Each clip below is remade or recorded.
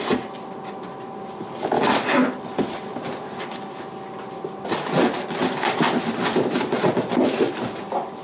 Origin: recorded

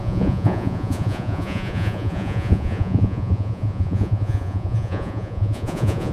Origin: remade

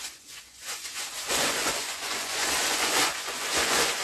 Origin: remade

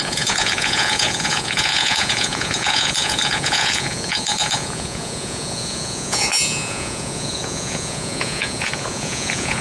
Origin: remade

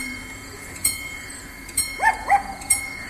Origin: remade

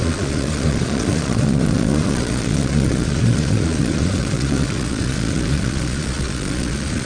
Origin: remade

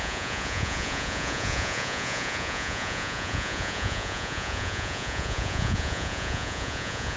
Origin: remade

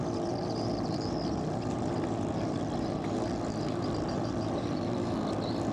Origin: recorded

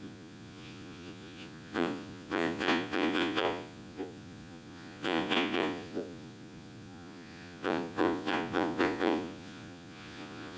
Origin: remade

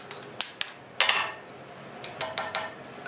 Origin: recorded